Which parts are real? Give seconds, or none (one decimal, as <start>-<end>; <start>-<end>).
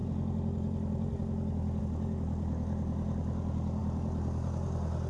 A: 0.0-5.1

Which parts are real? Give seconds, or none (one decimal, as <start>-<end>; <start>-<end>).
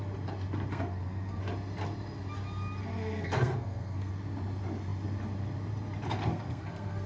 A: 0.0-0.7; 1.4-2.9; 4.1-6.2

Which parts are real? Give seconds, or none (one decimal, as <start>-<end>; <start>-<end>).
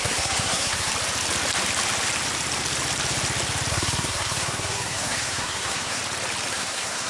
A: 0.9-3.7; 6.0-6.5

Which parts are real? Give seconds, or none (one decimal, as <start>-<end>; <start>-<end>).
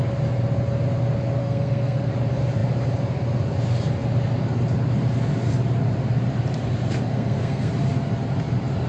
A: 0.0-1.4; 2.1-7.1; 7.7-8.9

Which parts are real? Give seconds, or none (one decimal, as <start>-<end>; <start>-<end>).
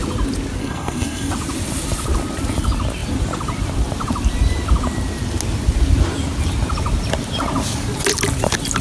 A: 0.0-0.6; 1.3-8.8